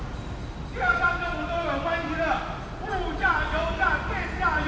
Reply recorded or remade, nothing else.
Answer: recorded